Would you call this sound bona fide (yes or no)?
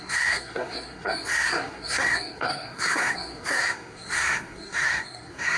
no